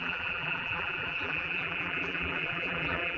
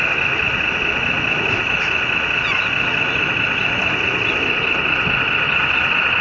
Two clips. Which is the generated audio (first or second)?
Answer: first